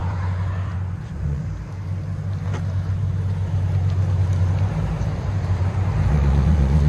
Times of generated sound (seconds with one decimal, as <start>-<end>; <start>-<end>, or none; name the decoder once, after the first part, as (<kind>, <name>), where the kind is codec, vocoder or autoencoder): 0.0-1.4 (vocoder, Vocos); 6.1-6.9